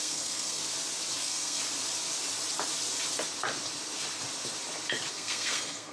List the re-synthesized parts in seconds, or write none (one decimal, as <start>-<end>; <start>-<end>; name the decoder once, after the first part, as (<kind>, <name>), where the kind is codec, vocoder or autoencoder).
0.0-0.6 (codec, SNAC); 1.2-1.6; 5.1-5.9